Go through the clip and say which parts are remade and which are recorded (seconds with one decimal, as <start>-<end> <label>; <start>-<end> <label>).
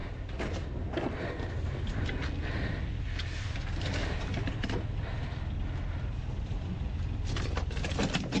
0.0-8.4 recorded